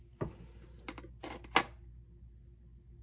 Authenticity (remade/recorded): recorded